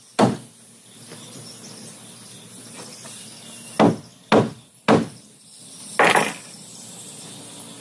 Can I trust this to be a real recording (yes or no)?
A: yes